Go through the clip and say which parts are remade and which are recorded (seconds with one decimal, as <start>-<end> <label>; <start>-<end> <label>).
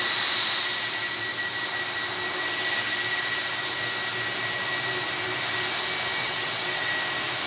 0.0-6.2 recorded; 6.2-6.9 remade; 6.9-7.5 recorded